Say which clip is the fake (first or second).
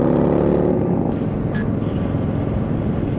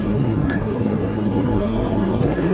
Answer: second